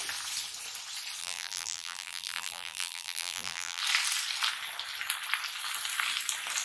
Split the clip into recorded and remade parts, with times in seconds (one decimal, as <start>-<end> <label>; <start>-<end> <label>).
0.0-1.2 recorded; 1.2-3.8 remade; 3.8-6.6 recorded